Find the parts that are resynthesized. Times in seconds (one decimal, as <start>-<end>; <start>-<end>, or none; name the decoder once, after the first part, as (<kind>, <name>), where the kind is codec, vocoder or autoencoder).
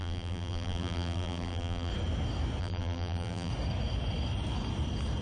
0.0-1.9 (vocoder, BigVGAN v2); 2.6-3.5